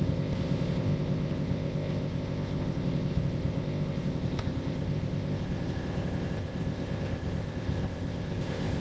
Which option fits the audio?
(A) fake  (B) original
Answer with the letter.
A